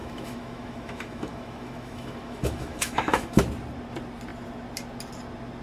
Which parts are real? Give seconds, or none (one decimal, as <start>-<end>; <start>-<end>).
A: 3.4-5.6